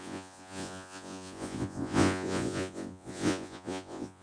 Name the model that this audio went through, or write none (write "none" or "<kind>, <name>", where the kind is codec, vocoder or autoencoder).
vocoder, Vocos